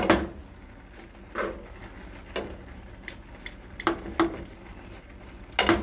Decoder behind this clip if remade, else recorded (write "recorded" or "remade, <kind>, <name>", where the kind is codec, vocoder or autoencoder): recorded